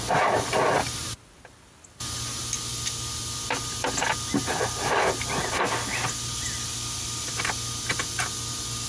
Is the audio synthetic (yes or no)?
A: no